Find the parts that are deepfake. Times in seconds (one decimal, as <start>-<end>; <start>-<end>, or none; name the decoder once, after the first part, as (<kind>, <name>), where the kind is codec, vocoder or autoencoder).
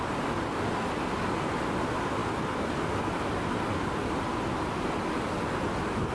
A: none